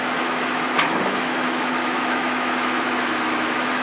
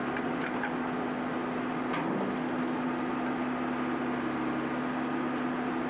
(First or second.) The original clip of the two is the second